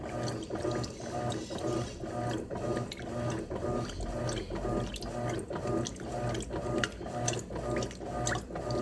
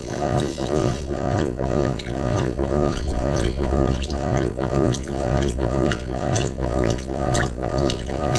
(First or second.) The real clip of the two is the first